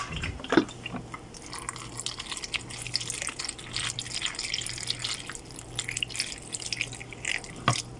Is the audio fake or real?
real